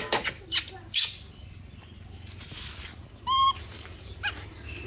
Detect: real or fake real